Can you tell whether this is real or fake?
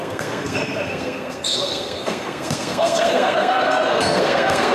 fake